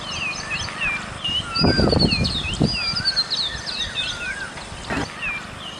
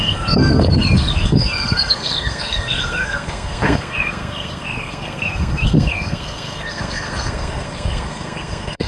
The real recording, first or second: first